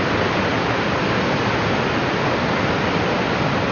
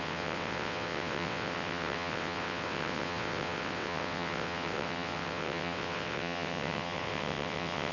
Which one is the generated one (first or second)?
second